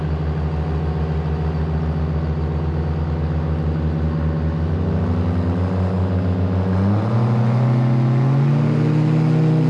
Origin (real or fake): real